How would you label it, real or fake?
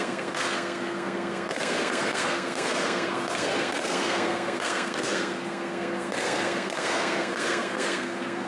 fake